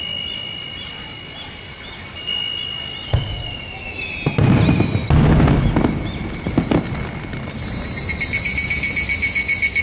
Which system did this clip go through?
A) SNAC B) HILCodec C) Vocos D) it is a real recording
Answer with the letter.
D